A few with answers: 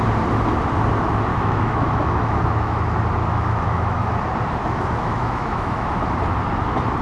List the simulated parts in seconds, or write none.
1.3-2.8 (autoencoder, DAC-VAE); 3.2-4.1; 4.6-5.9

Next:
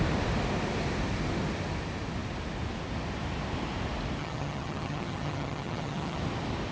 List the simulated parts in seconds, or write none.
4.2-6.2 (vocoder, HiFi-GAN)

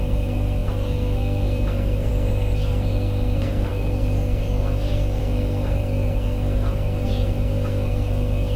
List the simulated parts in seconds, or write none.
0.0-8.6 (codec, SNAC)

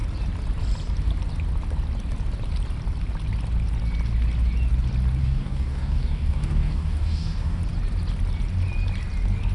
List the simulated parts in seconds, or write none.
5.2-7.6 (codec, DAC)

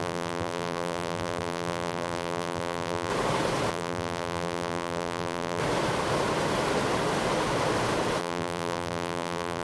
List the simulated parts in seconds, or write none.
0.0-3.1 (vocoder, BigVGAN v2); 3.7-5.6; 8.2-9.6

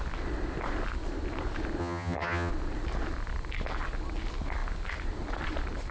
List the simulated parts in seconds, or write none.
1.8-2.5 (vocoder, HiFi-GAN)